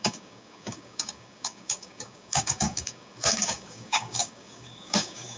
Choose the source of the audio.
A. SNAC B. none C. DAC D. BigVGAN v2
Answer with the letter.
C